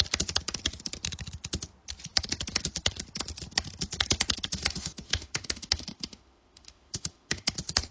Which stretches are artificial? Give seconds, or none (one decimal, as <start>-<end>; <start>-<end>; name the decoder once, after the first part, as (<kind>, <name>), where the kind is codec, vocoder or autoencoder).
4.5-7.5 (autoencoder, DAC-VAE)